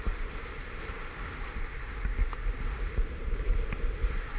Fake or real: fake